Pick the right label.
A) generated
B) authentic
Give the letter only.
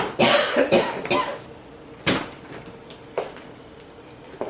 B